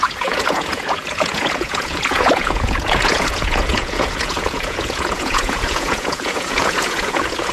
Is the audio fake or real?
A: fake